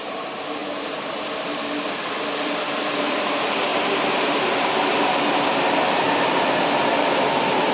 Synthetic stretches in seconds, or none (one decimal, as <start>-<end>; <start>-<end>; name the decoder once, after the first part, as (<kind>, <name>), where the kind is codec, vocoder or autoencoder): 0.0-7.7 (vocoder, BigVGAN v2)